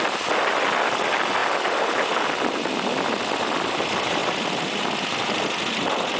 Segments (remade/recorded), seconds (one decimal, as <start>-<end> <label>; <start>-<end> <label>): 0.0-6.2 recorded